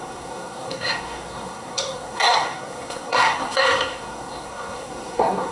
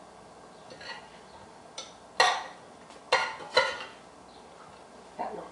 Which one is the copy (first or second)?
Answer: first